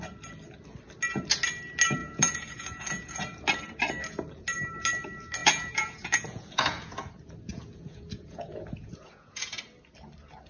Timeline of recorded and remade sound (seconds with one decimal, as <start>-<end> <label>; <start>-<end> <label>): 0.0-2.0 recorded; 2.0-3.4 remade; 3.4-5.4 recorded; 5.4-7.1 remade; 7.1-7.5 recorded; 7.5-9.6 remade; 9.6-10.5 recorded